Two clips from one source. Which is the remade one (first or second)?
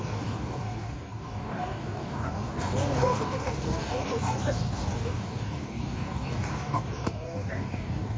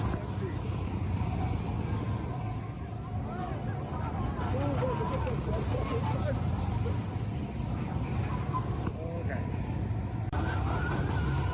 first